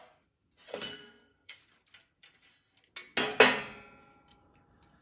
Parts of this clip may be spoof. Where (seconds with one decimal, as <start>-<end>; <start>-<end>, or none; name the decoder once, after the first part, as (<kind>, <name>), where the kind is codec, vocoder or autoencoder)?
0.7-1.6 (codec, SNAC)